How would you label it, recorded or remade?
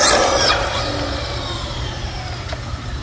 recorded